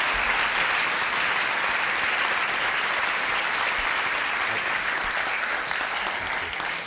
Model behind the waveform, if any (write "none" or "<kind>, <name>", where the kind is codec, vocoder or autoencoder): none